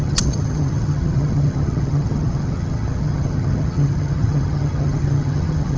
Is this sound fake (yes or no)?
yes